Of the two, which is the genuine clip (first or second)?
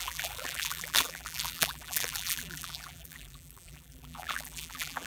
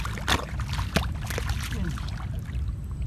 second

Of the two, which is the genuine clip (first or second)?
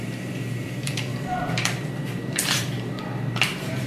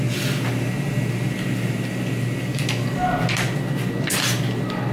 second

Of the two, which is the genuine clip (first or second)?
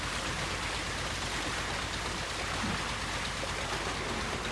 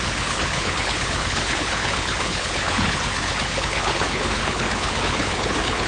first